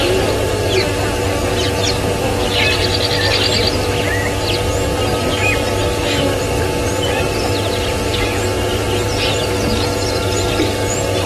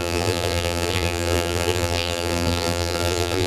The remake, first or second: second